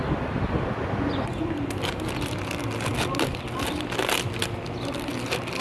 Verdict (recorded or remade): recorded